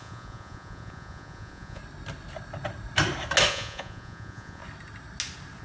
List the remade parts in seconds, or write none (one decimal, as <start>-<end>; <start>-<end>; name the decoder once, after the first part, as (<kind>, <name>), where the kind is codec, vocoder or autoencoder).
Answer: 0.0-1.8 (vocoder, Vocos); 3.5-4.6